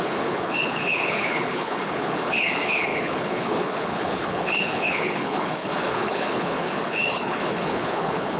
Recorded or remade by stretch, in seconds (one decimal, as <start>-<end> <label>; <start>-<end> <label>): 0.0-8.4 remade